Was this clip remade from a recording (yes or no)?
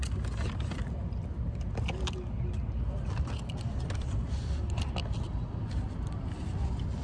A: no